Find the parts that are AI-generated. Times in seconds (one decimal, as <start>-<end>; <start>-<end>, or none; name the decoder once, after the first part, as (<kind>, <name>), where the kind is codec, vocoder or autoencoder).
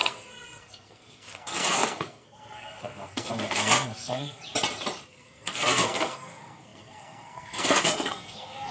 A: 0.0-4.4 (codec, SNAC); 5.1-8.7